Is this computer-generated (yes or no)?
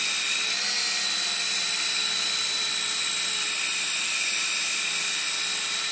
yes